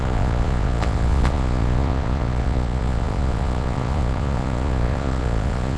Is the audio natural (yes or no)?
no